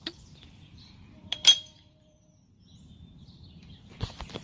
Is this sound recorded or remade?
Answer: remade